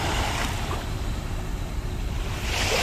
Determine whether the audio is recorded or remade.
remade